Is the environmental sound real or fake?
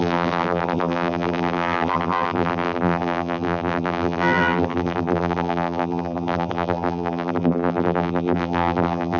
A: fake